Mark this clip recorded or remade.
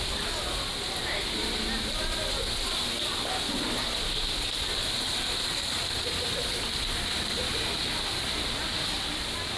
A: recorded